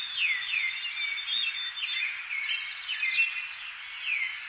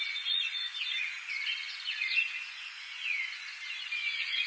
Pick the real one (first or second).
first